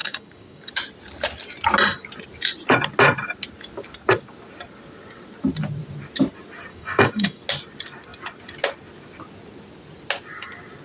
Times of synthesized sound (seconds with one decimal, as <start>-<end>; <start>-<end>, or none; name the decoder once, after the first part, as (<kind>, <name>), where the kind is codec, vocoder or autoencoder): 0.0-0.7 (codec, DAC); 6.7-7.4